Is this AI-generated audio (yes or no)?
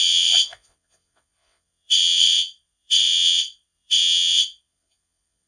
yes